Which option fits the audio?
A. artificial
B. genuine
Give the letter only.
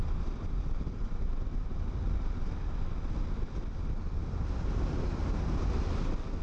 B